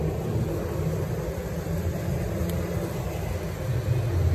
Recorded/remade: recorded